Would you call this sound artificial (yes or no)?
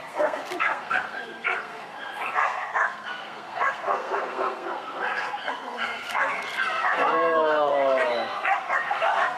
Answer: yes